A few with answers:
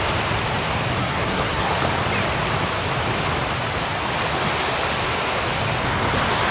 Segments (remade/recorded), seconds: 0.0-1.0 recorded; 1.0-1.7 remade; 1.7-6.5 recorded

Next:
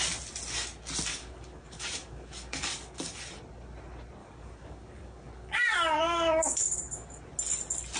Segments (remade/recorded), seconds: 0.0-1.1 recorded; 1.1-3.2 remade; 3.2-4.2 recorded; 4.2-7.2 remade; 7.2-8.0 recorded

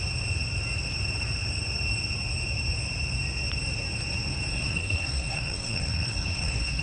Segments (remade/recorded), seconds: 0.0-4.5 recorded; 4.5-6.8 remade

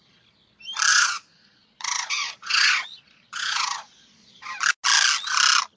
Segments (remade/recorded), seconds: 0.0-0.9 recorded; 0.9-4.4 remade; 4.4-5.8 recorded

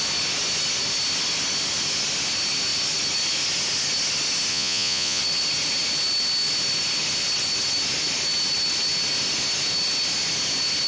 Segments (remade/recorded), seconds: 0.0-4.5 recorded; 4.5-5.2 remade; 5.2-10.9 recorded